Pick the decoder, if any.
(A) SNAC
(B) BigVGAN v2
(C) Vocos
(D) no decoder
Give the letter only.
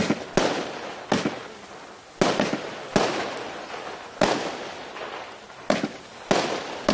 D